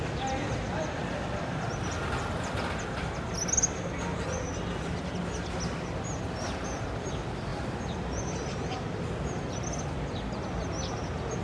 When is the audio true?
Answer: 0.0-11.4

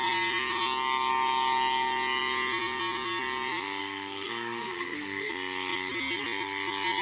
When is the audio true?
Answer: 0.0-3.8; 5.3-7.0

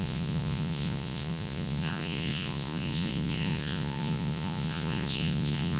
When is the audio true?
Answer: none